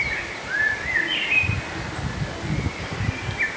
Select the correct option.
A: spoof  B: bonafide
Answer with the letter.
B